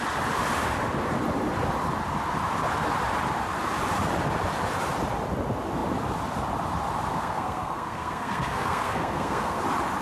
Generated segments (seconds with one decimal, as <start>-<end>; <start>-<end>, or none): 7.1-9.6